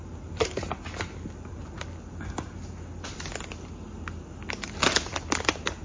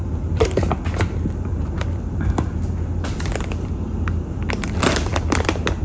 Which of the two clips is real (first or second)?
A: first